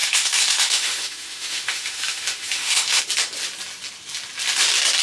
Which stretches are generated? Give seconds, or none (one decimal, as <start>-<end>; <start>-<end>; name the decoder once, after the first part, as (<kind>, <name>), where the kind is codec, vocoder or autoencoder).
0.0-3.0 (autoencoder, DAC-VAE)